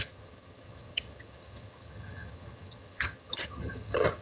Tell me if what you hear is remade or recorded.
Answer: remade